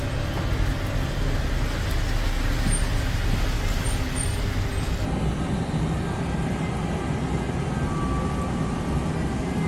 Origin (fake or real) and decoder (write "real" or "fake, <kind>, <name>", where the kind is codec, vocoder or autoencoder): real